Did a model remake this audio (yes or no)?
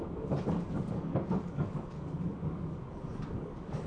yes